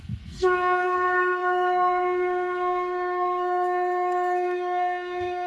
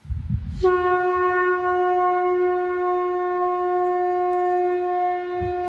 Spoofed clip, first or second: first